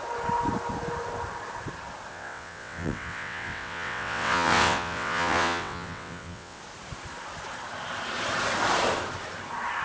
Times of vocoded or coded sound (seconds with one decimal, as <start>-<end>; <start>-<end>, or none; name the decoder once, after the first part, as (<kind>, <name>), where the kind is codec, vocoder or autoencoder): 2.1-6.6 (vocoder, WaveNeXt)

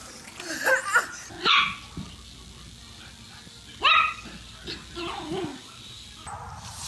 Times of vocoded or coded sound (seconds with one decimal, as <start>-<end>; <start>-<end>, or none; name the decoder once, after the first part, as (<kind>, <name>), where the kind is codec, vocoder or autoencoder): none

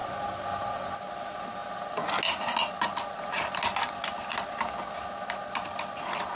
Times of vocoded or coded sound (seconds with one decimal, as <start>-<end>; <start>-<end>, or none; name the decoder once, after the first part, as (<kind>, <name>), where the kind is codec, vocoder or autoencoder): none

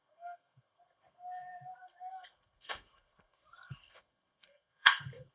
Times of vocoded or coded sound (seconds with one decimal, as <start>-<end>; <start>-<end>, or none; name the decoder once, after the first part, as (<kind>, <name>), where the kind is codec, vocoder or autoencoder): 0.0-5.3 (codec, SNAC)

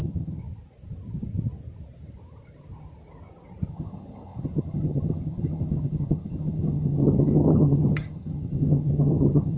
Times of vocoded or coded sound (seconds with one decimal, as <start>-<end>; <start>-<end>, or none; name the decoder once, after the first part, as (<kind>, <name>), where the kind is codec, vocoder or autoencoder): 0.0-0.4 (vocoder, HiFi-GAN); 3.7-9.6

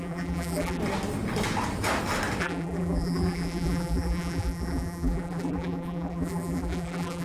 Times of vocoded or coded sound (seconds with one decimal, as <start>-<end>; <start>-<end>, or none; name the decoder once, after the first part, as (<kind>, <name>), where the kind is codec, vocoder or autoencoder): 0.0-0.8 (vocoder, BigVGAN v2); 2.4-7.2